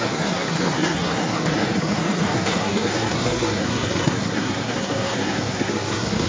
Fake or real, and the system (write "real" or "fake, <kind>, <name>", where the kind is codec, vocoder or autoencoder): fake, codec, SNAC